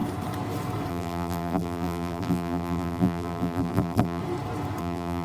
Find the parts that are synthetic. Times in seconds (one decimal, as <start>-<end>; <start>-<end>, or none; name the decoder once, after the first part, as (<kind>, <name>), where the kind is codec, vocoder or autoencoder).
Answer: 0.9-4.2 (vocoder, BigVGAN v2); 4.8-5.2